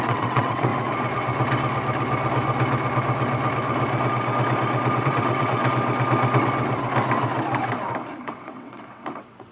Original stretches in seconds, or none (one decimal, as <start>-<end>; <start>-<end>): 0.7-5.0; 5.6-8.2